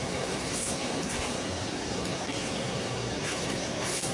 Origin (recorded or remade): remade